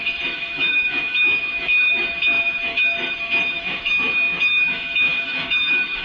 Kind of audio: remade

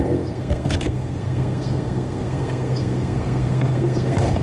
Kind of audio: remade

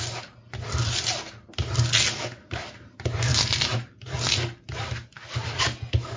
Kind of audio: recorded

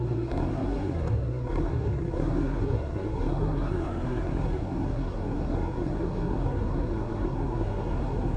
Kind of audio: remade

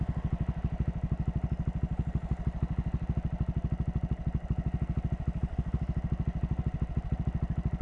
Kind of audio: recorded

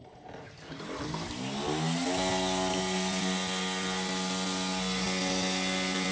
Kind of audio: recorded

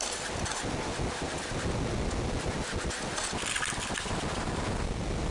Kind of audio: recorded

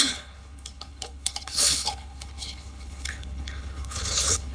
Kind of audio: remade